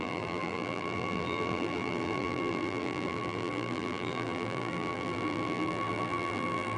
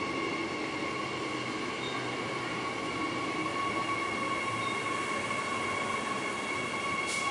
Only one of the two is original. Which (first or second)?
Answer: second